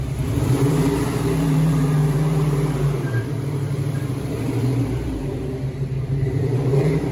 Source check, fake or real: fake